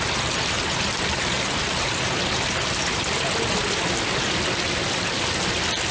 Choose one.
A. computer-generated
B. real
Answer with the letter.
B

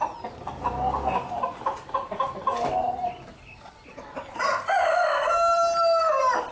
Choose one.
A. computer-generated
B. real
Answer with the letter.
B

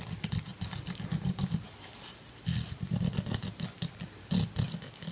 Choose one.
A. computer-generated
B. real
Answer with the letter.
B